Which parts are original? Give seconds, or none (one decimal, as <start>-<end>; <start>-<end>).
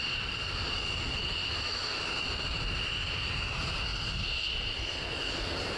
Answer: 0.0-1.4; 2.0-5.8